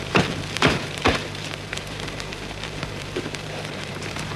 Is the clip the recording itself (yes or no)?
no